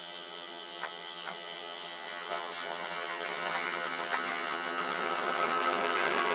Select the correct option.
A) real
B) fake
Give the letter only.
B